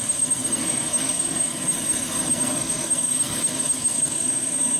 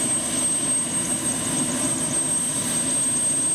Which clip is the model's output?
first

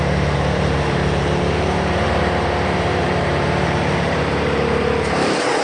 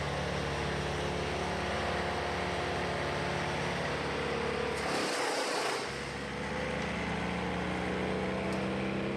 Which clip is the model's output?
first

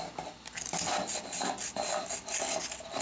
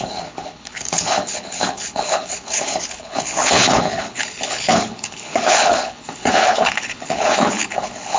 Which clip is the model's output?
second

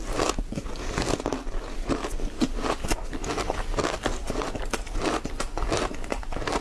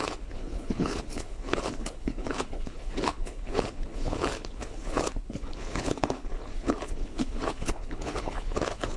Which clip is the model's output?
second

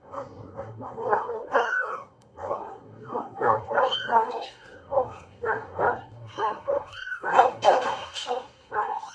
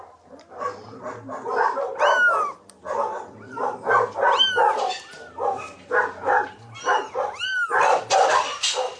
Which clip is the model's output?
first